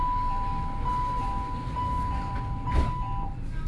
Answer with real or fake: real